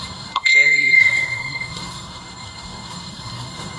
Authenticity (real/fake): fake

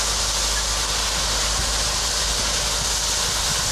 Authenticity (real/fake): real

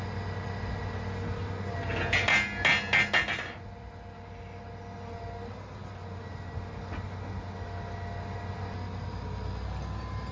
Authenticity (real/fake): real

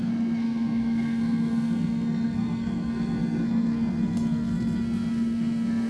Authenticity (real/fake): fake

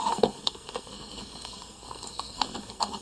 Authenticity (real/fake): fake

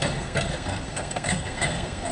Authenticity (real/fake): fake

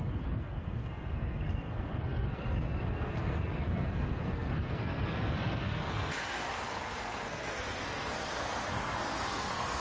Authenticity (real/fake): fake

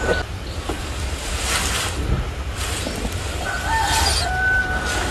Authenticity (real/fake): real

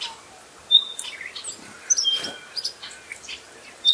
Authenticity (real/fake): real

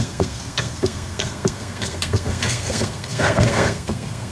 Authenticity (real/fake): fake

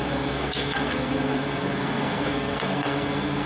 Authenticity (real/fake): fake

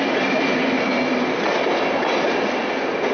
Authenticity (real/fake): real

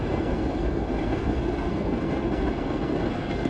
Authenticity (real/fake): fake